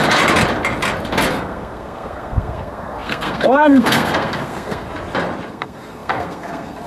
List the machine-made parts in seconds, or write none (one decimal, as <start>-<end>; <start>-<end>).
1.3-4.9; 5.5-6.9